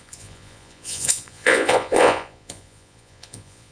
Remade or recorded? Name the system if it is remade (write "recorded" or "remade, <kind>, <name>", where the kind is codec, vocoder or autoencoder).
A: remade, vocoder, Vocos